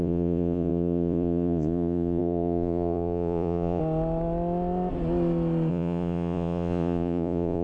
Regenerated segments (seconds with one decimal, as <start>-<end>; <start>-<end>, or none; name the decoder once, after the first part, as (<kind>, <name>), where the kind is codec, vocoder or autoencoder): 0.0-3.8 (vocoder, Vocos); 5.7-7.6

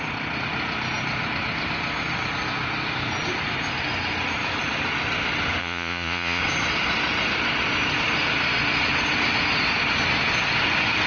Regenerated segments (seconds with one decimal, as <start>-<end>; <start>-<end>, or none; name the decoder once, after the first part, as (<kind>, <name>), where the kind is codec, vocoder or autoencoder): 5.6-6.4 (vocoder, Vocos)

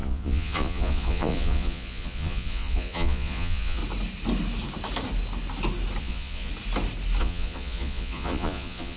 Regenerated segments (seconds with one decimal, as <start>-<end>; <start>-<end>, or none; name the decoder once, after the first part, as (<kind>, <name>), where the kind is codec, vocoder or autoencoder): 0.0-3.8 (vocoder, Vocos); 6.0-6.5; 7.2-9.0

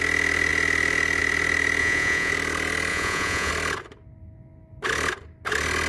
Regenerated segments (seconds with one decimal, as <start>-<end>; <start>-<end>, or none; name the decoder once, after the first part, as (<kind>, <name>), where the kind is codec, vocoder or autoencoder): 1.8-2.3 (vocoder, Vocos); 2.9-3.5